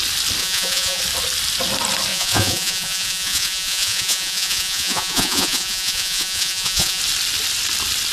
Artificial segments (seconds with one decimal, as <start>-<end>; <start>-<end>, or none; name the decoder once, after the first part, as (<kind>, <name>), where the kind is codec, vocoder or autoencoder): 0.4-1.0 (vocoder, Vocos); 2.1-7.0